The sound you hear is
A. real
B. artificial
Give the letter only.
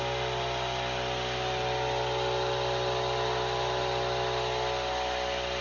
A